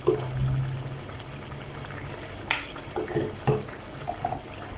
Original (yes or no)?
yes